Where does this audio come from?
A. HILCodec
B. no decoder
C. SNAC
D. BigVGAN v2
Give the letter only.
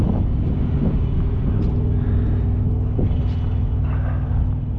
B